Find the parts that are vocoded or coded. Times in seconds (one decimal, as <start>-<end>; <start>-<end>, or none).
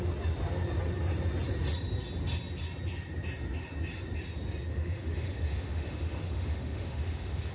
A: 4.7-7.5